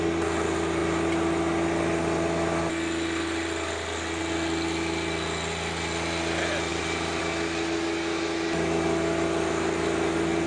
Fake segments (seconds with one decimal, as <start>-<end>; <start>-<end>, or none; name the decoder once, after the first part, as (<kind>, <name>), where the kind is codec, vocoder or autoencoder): 6.7-7.2 (vocoder, BigVGAN v2)